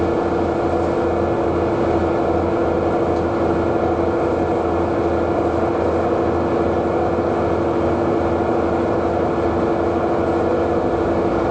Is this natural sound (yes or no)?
yes